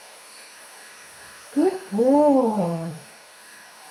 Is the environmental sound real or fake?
fake